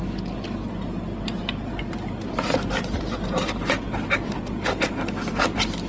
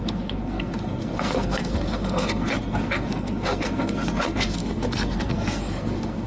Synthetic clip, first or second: second